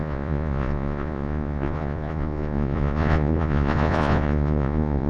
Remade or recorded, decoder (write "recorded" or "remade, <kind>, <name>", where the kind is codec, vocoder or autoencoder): remade, vocoder, Vocos